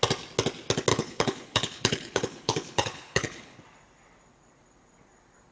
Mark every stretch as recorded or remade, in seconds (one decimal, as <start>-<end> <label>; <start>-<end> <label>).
0.0-0.9 recorded; 0.9-3.6 remade; 3.6-5.5 recorded